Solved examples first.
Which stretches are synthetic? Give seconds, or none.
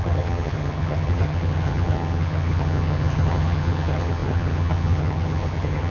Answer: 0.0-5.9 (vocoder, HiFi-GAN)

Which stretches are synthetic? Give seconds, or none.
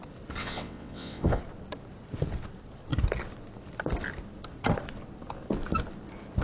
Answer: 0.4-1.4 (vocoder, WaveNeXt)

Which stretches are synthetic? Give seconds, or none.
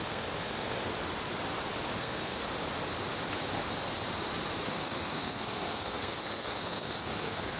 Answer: 0.0-0.9 (codec, SNAC); 2.0-2.4; 4.6-7.6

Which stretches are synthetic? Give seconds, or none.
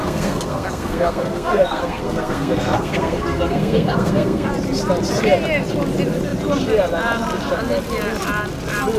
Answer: 0.0-4.5 (codec, SNAC)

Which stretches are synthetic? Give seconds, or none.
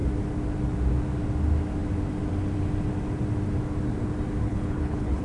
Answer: 4.5-5.2 (codec, HILCodec)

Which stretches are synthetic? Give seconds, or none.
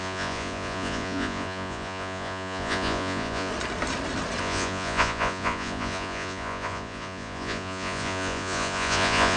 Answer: 0.0-3.5 (vocoder, Vocos); 4.4-9.4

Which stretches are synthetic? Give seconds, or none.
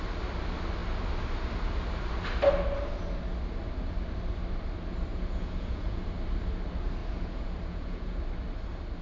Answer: 5.1-6.0 (vocoder, Vocos); 7.0-8.2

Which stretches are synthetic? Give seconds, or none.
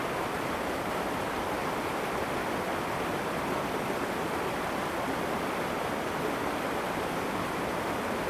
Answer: 1.6-2.4 (vocoder, BigVGAN v2)